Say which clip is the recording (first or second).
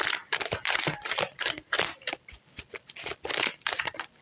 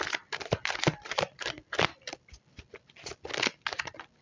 second